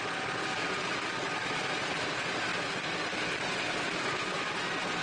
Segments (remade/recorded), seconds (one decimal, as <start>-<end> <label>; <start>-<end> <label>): 0.0-5.0 recorded